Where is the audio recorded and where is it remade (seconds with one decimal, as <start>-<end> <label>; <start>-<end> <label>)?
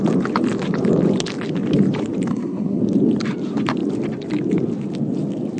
0.0-2.3 recorded; 2.3-2.8 remade; 2.8-5.6 recorded